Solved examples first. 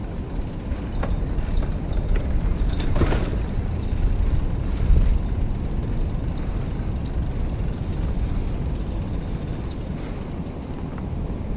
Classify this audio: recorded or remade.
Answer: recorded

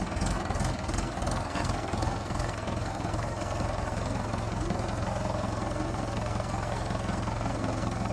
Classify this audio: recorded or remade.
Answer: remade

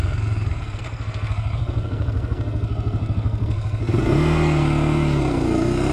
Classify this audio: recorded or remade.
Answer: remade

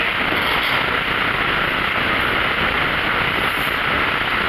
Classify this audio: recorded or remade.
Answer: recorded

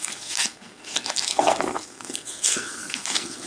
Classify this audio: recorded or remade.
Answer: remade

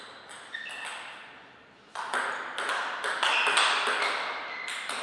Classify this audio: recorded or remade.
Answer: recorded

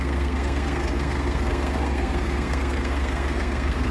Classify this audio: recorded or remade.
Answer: remade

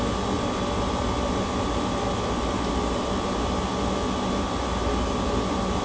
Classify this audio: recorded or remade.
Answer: recorded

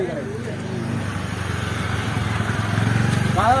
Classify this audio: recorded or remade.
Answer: recorded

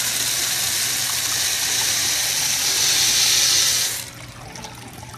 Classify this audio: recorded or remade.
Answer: recorded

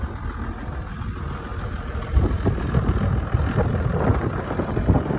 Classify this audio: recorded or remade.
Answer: recorded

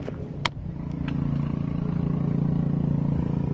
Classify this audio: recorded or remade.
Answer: recorded